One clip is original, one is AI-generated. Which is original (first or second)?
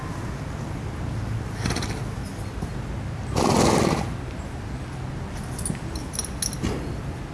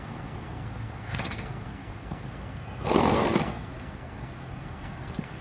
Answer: first